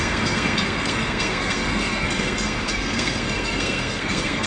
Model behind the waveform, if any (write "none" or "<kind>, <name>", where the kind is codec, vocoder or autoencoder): codec, SNAC